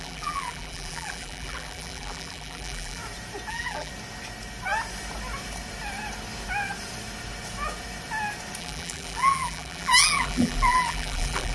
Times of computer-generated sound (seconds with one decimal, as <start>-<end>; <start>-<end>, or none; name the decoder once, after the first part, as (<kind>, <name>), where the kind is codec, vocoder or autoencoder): 0.0-3.0 (vocoder, BigVGAN v2); 3.5-3.9; 8.6-11.5